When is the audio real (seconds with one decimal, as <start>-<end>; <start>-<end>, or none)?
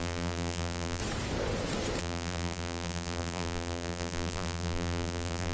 1.0-2.0